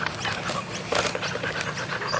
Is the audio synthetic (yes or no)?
no